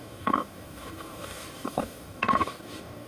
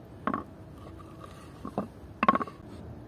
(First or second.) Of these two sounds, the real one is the second